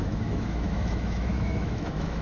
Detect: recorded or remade remade